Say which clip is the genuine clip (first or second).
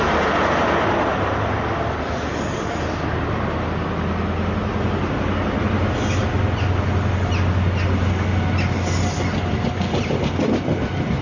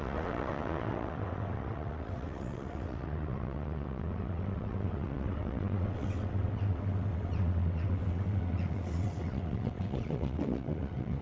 first